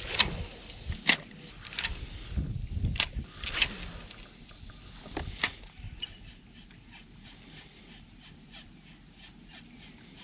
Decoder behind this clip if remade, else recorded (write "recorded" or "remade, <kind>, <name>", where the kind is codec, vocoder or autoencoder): recorded